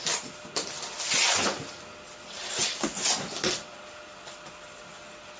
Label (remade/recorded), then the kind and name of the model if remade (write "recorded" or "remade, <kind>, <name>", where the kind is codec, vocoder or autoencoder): recorded